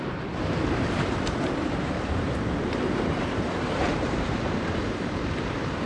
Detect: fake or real fake